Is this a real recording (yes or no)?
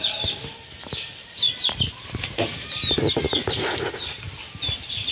yes